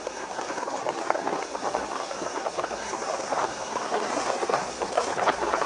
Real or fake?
fake